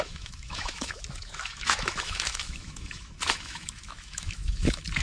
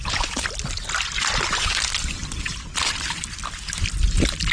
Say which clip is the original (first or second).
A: second